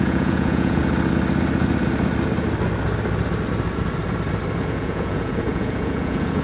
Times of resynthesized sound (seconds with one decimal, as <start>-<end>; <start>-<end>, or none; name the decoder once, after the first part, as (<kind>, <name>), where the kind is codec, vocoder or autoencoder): 0.0-0.8 (vocoder, Vocos); 4.6-6.4